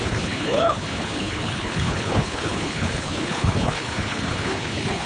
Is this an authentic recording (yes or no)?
no